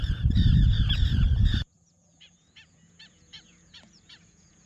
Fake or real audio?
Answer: fake